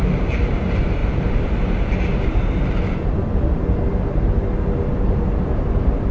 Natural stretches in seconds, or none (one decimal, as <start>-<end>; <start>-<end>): 0.0-6.1